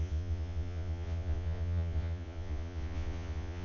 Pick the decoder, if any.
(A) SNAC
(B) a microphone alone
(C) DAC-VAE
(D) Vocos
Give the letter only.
D